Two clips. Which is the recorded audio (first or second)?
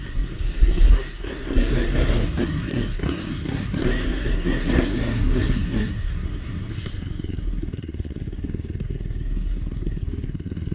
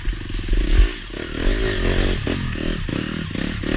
second